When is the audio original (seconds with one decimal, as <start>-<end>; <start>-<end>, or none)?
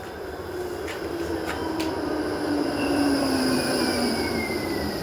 none